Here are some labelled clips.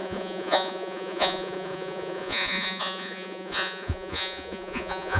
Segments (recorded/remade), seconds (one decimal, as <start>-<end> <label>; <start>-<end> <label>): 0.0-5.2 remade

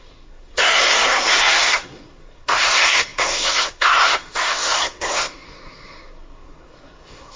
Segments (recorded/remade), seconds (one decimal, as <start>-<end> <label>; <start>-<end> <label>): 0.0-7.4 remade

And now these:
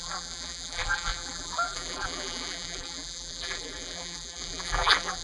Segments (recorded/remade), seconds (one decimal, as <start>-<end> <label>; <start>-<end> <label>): 0.0-5.2 remade

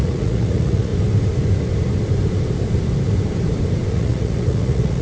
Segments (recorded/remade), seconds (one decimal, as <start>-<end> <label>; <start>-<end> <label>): 0.0-0.9 remade; 0.9-3.9 recorded; 3.9-5.0 remade

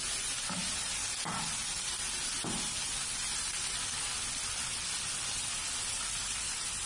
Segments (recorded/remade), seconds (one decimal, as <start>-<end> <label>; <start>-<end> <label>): 0.0-6.9 recorded

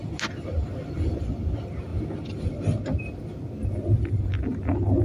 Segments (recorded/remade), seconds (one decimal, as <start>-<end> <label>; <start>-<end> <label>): 0.0-5.0 recorded

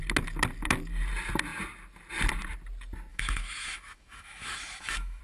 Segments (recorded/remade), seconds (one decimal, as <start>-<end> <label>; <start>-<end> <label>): 0.0-3.1 recorded; 3.1-5.2 remade